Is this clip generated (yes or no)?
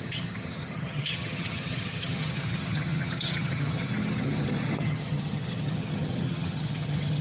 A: yes